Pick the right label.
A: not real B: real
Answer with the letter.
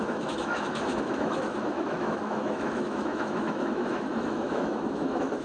A